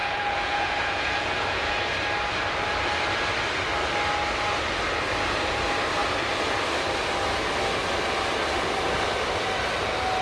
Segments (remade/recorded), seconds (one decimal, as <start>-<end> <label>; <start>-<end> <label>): 0.0-1.7 remade; 1.7-10.2 recorded